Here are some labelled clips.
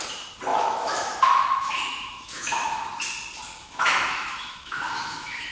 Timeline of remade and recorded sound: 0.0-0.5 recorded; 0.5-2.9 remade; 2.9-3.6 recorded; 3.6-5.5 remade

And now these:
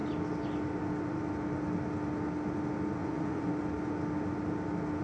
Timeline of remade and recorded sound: 0.0-3.0 recorded; 3.0-3.5 remade; 3.5-5.0 recorded

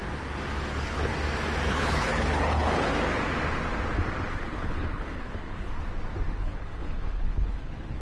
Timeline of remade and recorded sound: 0.0-0.7 recorded; 0.7-1.1 remade; 1.1-1.7 recorded; 1.7-2.9 remade; 2.9-4.3 recorded; 4.3-5.7 remade; 5.7-6.3 recorded; 6.3-8.0 remade

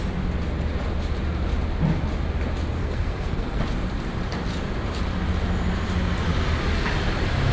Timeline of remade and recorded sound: 0.0-2.8 recorded; 2.8-3.6 remade; 3.6-7.5 recorded

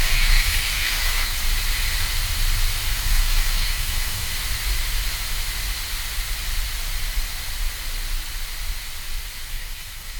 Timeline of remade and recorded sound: 0.0-1.4 remade; 1.4-2.9 recorded; 2.9-4.3 remade; 4.3-9.5 recorded; 9.5-10.2 remade